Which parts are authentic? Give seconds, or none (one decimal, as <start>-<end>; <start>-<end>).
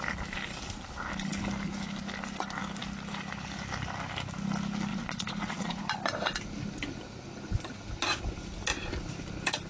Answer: 0.0-4.9; 5.8-9.7